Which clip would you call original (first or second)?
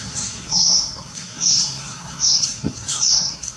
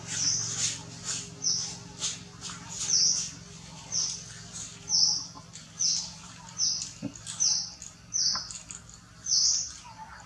second